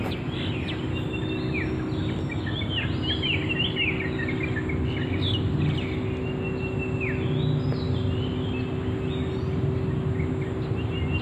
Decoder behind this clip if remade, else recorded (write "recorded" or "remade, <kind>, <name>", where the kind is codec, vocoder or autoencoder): recorded